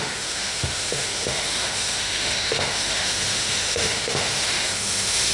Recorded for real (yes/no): no